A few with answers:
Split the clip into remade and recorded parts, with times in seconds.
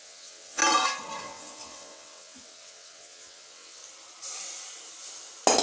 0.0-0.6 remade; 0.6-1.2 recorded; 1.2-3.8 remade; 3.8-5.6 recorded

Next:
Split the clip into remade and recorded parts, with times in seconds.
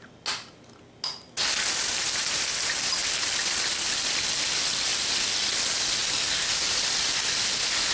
0.0-7.9 recorded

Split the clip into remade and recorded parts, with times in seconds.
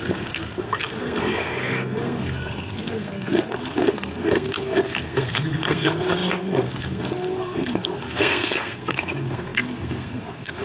0.0-10.6 remade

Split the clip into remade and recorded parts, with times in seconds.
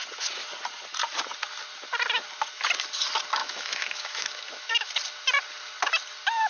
0.0-3.4 recorded; 3.4-4.9 remade; 4.9-6.5 recorded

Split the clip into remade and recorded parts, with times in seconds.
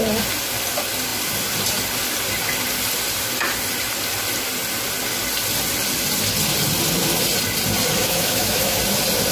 0.0-8.0 recorded; 8.0-8.8 remade; 8.8-9.3 recorded